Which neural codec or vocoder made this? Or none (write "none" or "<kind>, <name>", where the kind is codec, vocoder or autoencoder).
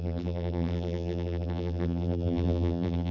vocoder, BigVGAN v2